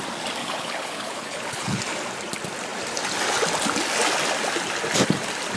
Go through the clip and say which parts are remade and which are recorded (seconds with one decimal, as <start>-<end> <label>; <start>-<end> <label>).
0.0-0.4 recorded; 0.4-1.8 remade; 1.8-5.6 recorded